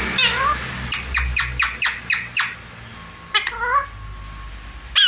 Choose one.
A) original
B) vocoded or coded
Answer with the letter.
A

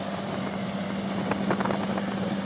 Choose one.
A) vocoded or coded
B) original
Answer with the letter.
B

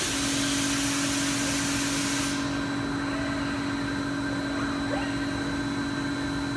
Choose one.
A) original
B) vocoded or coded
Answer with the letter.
A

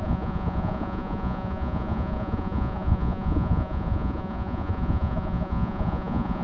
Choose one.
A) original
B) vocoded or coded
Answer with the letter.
B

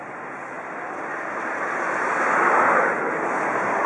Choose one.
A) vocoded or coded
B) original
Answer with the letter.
B